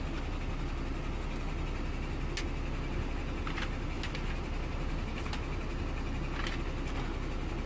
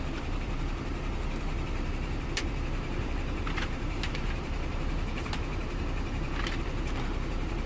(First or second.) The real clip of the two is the first